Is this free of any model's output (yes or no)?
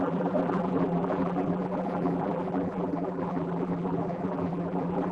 no